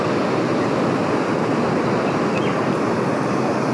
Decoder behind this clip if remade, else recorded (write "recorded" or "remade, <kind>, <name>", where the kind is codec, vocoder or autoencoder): recorded